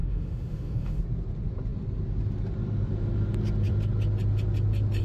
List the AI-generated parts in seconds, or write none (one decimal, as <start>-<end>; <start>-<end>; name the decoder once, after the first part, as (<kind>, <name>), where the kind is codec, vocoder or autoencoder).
0.0-1.0 (autoencoder, DAC-VAE)